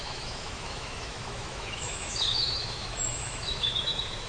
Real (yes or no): no